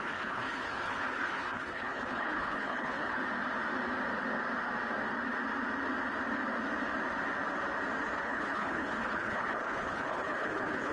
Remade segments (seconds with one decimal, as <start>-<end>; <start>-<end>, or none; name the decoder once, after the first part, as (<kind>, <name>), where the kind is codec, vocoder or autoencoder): 0.0-3.2 (codec, HILCodec); 8.2-10.9